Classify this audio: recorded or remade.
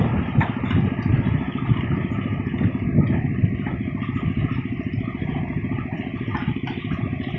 recorded